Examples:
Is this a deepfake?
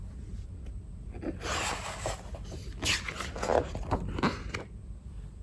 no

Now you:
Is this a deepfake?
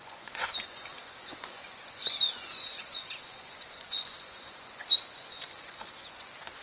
yes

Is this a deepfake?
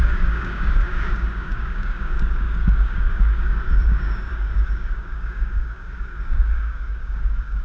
yes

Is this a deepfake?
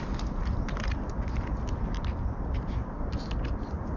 no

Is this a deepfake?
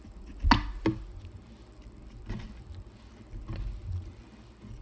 no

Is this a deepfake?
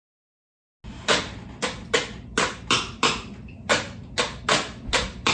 no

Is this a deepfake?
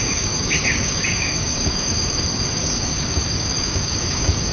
yes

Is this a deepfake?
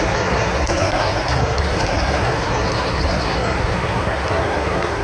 yes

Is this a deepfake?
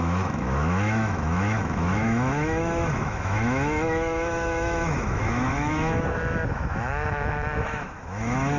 yes